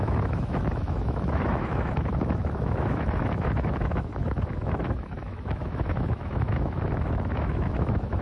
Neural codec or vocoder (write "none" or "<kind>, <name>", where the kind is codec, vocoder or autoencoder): autoencoder, DAC-VAE